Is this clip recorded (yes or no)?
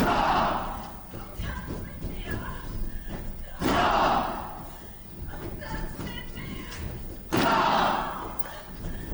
no